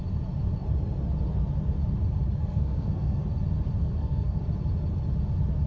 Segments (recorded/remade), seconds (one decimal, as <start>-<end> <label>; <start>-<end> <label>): 0.0-2.4 recorded; 2.4-3.2 remade; 3.2-3.8 recorded; 3.8-4.4 remade; 4.4-5.7 recorded